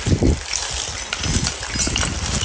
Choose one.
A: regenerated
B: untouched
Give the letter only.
B